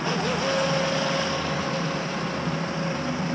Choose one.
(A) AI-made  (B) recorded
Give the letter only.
B